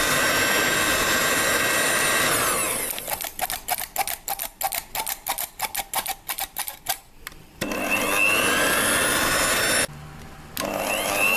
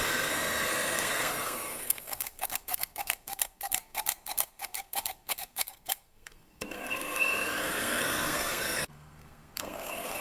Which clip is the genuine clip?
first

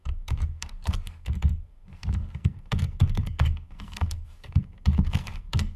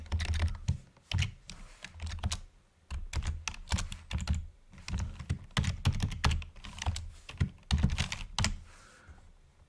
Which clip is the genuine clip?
second